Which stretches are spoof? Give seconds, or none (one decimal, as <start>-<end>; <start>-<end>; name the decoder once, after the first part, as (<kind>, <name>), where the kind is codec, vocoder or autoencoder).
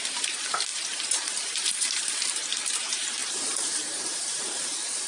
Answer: 0.0-5.1 (vocoder, BigVGAN v2)